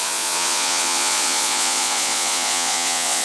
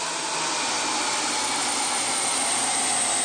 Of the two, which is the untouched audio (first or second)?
second